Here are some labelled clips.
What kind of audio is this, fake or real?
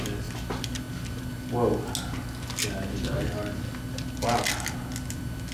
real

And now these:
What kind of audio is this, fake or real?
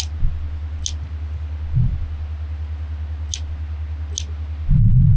real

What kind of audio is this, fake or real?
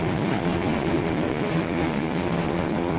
fake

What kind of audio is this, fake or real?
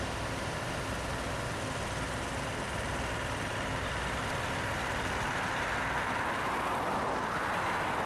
real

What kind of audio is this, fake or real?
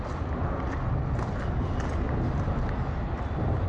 real